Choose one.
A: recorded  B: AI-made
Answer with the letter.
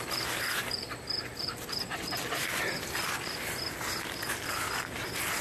A